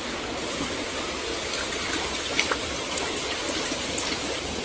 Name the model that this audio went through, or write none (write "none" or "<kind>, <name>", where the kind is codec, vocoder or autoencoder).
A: none